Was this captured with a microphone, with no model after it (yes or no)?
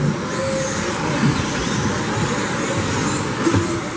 yes